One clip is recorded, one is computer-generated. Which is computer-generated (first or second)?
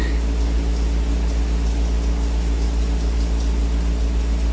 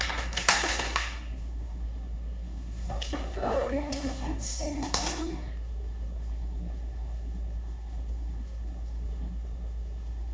second